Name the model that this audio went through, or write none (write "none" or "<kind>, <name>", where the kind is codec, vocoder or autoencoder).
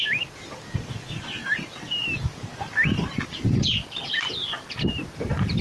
none